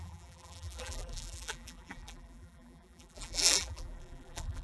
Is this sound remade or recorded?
remade